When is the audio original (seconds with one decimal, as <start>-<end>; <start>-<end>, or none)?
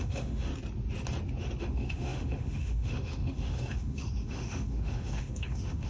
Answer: 0.5-1.6